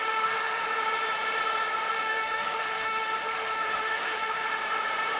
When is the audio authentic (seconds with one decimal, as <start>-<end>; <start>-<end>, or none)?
0.6-1.9; 4.6-5.2